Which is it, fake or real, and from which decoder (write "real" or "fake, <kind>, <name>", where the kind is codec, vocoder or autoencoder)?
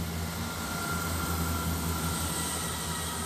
real